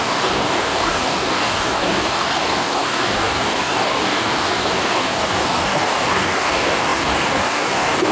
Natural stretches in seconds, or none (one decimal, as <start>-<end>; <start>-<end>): none